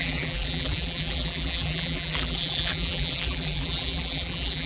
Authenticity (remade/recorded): remade